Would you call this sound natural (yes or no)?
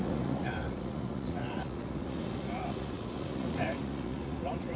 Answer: no